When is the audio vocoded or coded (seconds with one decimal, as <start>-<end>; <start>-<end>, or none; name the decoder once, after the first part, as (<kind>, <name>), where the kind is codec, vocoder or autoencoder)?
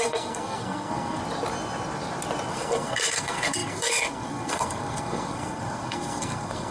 0.0-1.2 (codec, SNAC); 2.5-6.7